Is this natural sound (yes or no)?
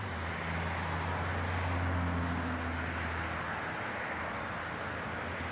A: yes